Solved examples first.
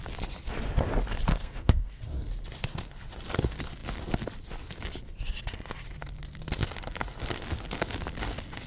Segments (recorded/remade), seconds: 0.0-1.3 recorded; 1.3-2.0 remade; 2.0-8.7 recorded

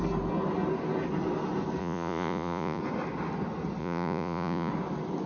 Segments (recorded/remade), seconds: 0.0-1.8 recorded; 1.8-2.8 remade; 2.8-3.8 recorded; 3.8-4.7 remade; 4.7-5.3 recorded

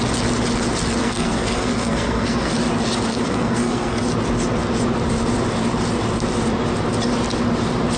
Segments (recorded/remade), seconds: 0.0-1.0 recorded; 1.0-2.5 remade; 2.5-3.1 recorded; 3.1-4.0 remade; 4.0-8.0 recorded

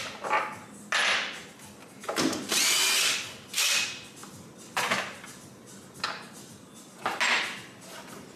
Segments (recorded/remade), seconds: 0.0-8.4 recorded

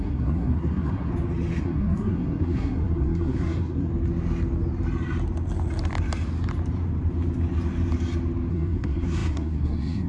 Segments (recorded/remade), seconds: 0.0-1.1 remade; 1.1-1.6 recorded; 1.6-3.9 remade; 3.9-8.5 recorded; 8.5-10.1 remade

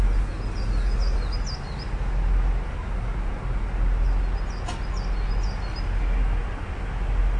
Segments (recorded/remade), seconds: 0.0-7.4 recorded

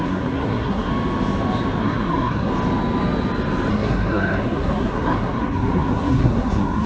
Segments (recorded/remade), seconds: 0.0-0.9 remade; 0.9-1.8 recorded; 1.8-2.5 remade; 2.5-3.7 recorded; 3.7-6.9 remade

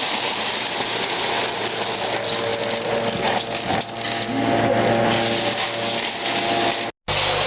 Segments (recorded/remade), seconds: 0.0-7.5 recorded